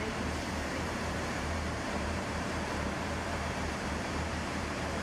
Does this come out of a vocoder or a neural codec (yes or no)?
yes